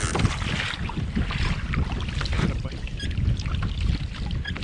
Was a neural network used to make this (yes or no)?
no